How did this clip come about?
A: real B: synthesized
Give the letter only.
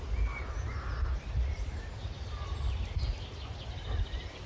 A